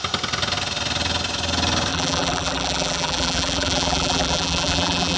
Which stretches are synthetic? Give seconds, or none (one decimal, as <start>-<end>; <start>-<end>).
1.9-5.2